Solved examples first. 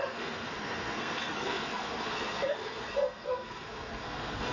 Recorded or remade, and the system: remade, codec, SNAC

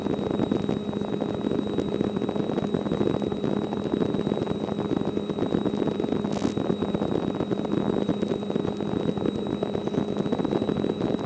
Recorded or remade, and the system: recorded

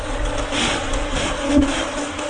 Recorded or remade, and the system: recorded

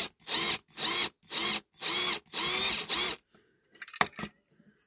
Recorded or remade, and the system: recorded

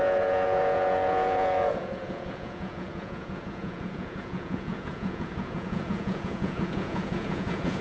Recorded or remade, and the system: remade, vocoder, Vocos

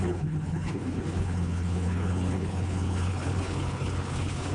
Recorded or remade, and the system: remade, codec, HILCodec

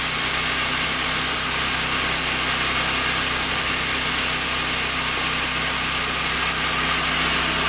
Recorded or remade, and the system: recorded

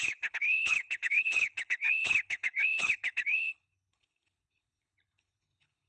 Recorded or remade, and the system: remade, codec, HILCodec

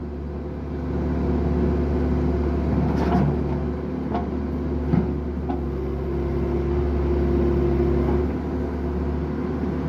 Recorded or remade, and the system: recorded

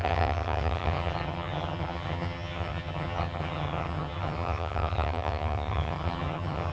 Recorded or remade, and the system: remade, vocoder, HiFi-GAN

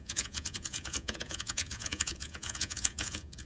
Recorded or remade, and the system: remade, vocoder, Vocos